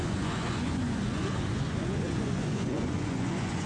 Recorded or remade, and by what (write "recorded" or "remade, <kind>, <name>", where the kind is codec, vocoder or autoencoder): remade, vocoder, Vocos